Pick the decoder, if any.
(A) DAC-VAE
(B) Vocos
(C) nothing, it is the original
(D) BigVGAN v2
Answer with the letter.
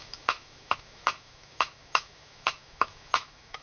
A